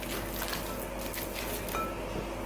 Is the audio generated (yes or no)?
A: no